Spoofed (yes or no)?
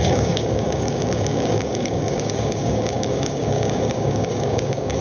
yes